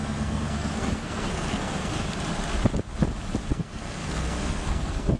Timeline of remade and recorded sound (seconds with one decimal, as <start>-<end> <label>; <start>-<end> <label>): 0.0-1.9 remade; 1.9-3.5 recorded; 3.5-5.2 remade